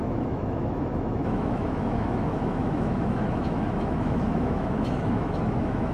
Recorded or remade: remade